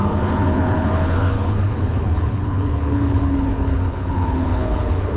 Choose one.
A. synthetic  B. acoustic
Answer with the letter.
A